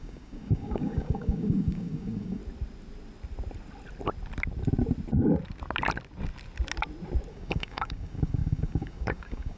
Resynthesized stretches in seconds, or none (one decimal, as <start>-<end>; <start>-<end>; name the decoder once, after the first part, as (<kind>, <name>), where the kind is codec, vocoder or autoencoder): 0.0-2.4 (codec, DAC); 7.3-9.6